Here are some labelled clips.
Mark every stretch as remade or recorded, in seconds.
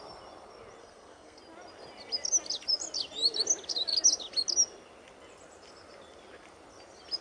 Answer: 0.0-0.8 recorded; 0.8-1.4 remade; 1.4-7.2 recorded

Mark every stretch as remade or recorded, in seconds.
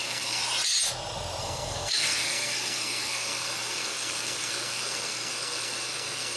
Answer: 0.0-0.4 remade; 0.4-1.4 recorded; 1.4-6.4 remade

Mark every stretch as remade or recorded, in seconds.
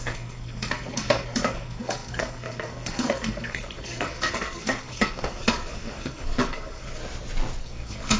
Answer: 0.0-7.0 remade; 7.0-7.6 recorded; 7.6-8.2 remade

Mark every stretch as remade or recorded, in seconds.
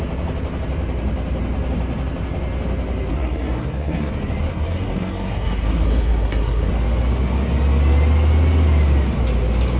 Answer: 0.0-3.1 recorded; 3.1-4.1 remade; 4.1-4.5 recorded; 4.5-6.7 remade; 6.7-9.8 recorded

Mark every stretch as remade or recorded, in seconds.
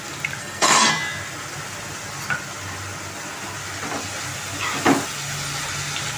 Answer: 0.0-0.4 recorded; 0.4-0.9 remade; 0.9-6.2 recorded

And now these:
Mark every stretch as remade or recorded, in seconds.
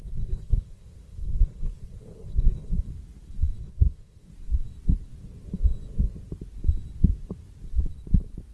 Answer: 0.0-2.9 remade; 2.9-3.6 recorded; 3.6-4.3 remade; 4.3-8.5 recorded